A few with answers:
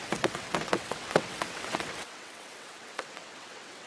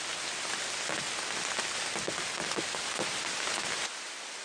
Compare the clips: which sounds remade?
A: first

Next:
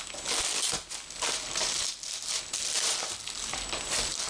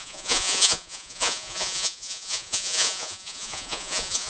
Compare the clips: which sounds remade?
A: second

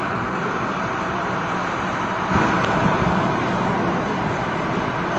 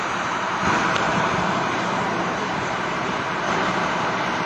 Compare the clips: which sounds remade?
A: second